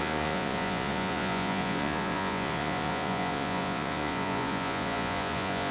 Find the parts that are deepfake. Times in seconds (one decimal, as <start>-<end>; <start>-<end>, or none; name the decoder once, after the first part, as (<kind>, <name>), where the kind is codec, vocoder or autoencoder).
0.0-5.7 (vocoder, Vocos)